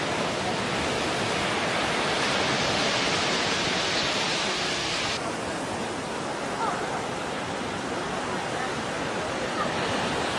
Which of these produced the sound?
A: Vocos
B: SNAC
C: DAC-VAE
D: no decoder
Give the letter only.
D